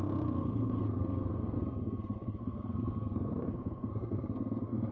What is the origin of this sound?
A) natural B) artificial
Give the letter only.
B